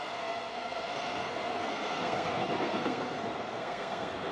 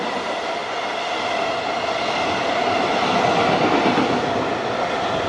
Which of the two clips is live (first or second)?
second